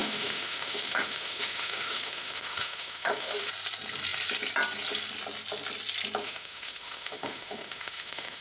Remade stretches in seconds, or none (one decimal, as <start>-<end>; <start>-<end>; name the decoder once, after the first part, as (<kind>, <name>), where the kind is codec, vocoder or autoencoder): 0.0-3.5 (autoencoder, DAC-VAE); 6.2-8.4